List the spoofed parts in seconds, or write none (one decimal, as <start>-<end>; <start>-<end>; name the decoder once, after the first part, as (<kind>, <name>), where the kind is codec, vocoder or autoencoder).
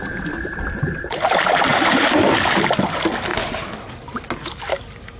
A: none